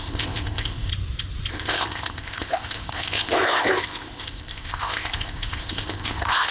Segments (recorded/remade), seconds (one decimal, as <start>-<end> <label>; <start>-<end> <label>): 0.0-0.9 remade; 0.9-1.5 recorded; 1.5-6.5 remade